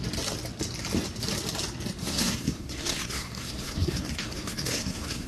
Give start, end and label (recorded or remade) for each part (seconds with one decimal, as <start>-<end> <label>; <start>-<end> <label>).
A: 0.0-2.0 recorded; 2.0-5.3 remade